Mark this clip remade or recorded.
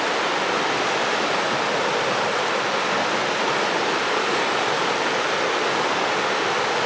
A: recorded